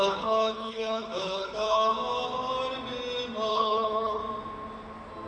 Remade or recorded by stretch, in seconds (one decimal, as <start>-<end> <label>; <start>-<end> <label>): 0.0-1.9 remade; 1.9-3.5 recorded; 3.5-4.2 remade; 4.2-5.3 recorded